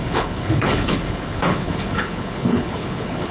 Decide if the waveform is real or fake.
fake